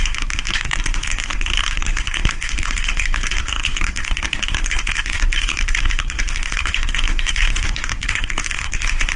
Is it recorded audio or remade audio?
remade